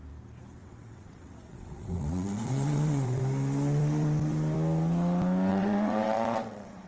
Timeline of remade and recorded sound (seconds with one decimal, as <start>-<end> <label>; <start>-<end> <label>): 0.0-0.6 recorded; 0.6-3.2 remade; 3.2-5.5 recorded; 5.5-6.9 remade